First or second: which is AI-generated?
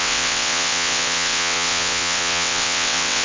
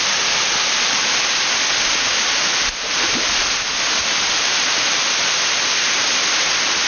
first